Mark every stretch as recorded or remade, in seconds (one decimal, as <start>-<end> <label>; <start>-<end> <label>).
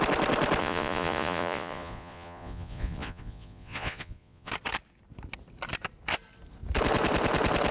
0.0-0.6 recorded; 0.6-4.5 remade; 4.5-7.7 recorded